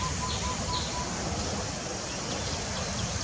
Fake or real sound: real